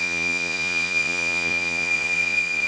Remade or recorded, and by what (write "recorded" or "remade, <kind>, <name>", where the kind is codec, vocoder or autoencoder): remade, vocoder, Vocos